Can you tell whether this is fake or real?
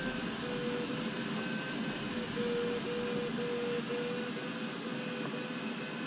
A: real